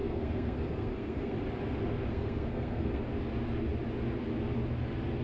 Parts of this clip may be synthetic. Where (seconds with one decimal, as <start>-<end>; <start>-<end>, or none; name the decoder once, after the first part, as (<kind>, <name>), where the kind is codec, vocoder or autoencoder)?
0.0-1.4 (codec, SNAC); 2.1-3.0